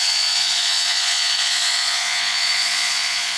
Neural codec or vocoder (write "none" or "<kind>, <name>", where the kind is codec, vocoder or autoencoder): vocoder, Vocos